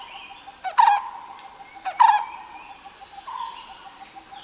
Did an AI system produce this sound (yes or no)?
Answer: no